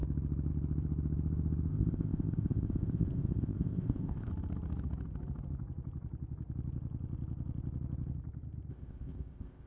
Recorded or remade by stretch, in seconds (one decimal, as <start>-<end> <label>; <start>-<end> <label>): 0.0-1.7 recorded; 1.7-4.3 remade; 4.3-8.7 recorded; 8.7-9.7 remade